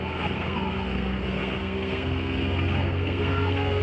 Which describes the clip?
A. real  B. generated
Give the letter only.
B